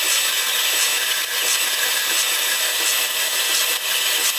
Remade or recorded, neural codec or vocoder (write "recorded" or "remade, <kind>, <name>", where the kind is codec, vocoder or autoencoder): recorded